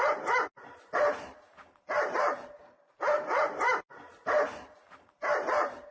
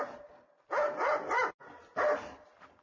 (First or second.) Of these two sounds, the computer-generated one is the first